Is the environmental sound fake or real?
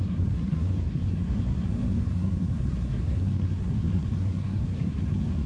fake